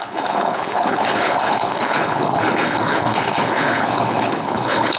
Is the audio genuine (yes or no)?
no